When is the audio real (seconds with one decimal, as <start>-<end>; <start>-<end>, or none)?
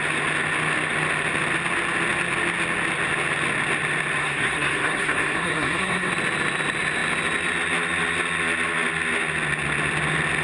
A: 0.0-4.2; 6.1-10.4